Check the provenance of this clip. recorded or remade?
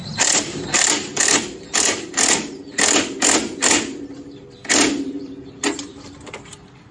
remade